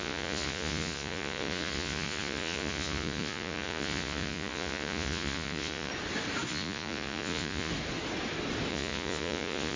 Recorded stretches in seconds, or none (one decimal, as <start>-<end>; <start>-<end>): 5.9-6.5; 7.7-8.7